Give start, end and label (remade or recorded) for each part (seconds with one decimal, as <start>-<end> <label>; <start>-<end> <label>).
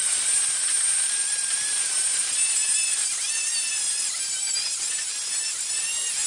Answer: 0.0-6.3 recorded